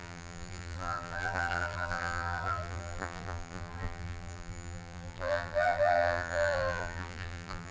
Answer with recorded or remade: remade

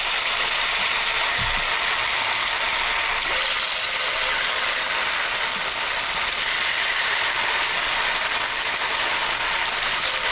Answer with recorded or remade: recorded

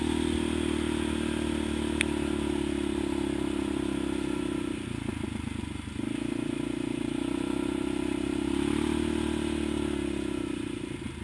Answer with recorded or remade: recorded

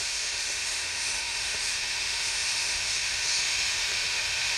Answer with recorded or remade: remade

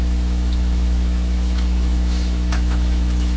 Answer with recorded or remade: remade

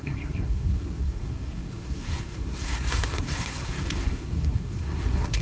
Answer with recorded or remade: remade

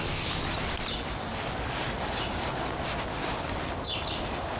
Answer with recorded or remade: recorded